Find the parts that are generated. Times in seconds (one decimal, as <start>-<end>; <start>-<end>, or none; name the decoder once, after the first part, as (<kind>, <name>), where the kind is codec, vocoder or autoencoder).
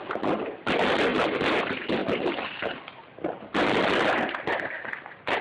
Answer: none